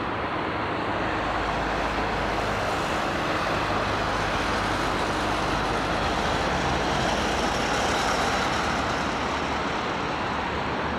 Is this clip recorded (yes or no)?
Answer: yes